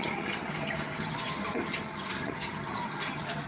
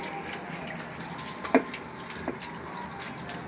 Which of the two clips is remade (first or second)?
first